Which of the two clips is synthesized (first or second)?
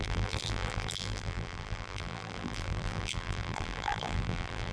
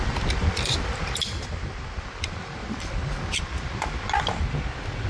first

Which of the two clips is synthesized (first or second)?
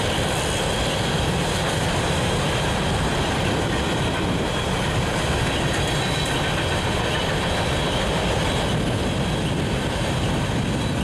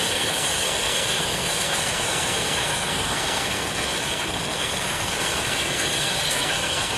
second